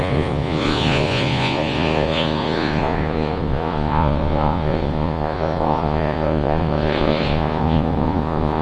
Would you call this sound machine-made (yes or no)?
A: yes